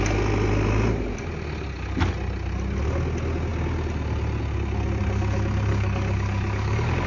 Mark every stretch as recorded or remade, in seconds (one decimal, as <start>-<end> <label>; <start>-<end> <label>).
0.0-5.7 recorded; 5.7-7.1 remade